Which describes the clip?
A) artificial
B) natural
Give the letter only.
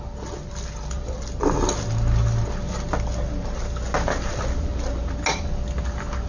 B